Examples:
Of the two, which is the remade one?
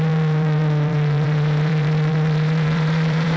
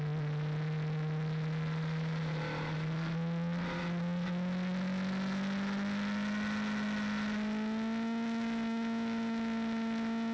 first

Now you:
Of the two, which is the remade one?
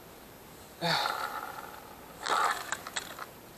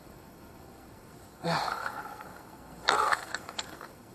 second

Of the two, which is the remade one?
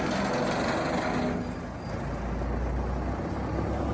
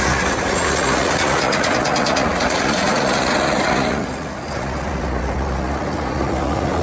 second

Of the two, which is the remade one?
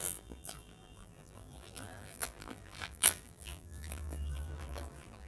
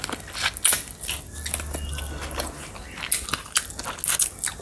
first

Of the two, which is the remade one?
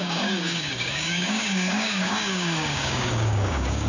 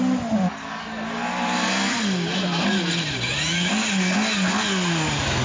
first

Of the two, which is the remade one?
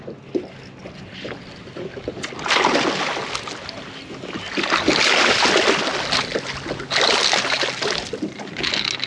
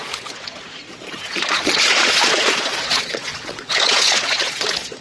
second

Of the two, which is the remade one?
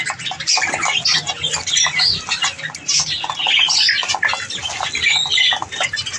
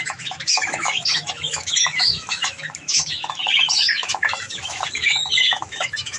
second